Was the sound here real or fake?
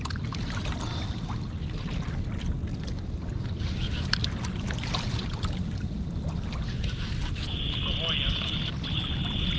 real